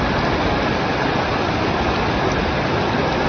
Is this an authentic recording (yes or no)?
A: yes